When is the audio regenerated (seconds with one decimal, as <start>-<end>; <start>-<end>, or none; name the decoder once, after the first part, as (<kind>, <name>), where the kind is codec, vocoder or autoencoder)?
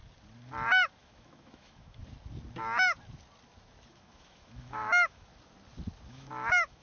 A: 1.0-2.0 (autoencoder, DAC-VAE); 3.9-5.3; 6.1-6.8